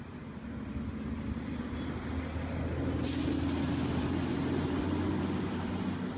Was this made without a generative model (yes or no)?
yes